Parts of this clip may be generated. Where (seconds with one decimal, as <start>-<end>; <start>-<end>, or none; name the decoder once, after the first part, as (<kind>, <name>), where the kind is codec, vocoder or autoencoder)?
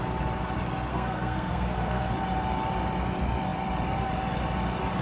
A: 0.9-2.1 (codec, SNAC)